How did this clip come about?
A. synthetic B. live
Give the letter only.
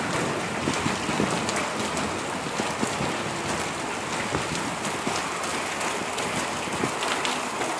B